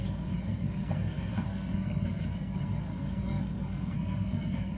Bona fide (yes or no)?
no